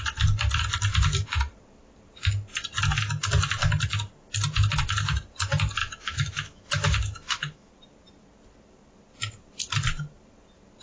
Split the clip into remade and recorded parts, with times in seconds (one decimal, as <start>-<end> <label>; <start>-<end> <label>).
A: 0.0-5.8 recorded; 5.8-7.7 remade; 7.7-10.8 recorded